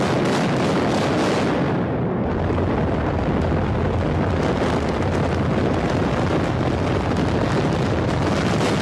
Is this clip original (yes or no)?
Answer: yes